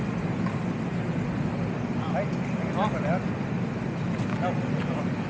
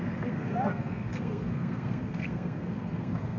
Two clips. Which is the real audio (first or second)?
first